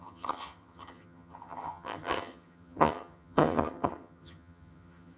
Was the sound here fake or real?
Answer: fake